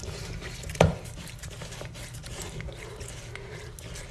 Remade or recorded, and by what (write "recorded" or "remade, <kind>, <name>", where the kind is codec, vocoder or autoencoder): recorded